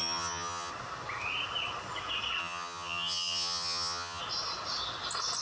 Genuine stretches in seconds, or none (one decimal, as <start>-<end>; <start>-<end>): 0.7-2.4; 4.2-5.4

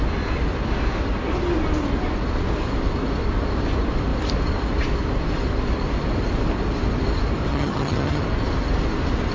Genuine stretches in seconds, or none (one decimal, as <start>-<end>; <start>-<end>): 0.0-7.5; 8.2-9.3